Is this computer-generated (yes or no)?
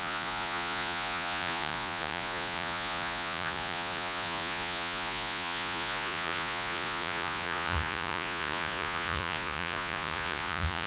yes